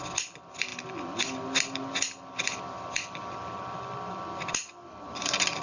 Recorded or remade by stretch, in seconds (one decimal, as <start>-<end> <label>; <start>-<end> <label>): 0.0-5.6 recorded